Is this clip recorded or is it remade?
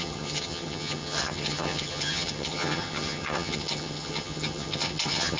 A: remade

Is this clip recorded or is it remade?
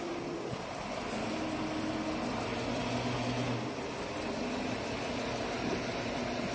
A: recorded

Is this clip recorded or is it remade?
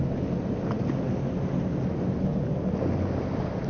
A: recorded